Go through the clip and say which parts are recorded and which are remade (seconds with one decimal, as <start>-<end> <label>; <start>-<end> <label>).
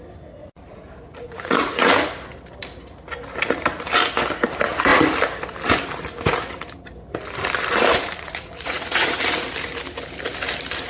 0.0-0.4 recorded; 0.4-1.9 remade; 1.9-7.9 recorded; 7.9-9.2 remade; 9.2-10.9 recorded